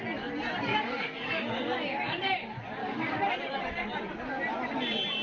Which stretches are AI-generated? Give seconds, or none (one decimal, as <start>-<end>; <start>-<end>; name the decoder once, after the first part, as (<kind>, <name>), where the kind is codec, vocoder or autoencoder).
0.7-1.6 (codec, DAC); 2.8-3.3